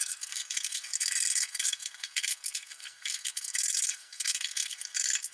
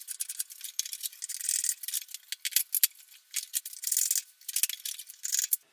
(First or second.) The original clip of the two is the second